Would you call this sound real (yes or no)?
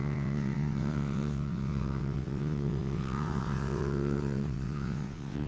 no